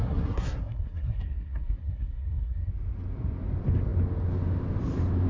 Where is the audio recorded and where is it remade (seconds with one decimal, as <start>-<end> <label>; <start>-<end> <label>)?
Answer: 0.0-2.7 remade; 2.7-5.3 recorded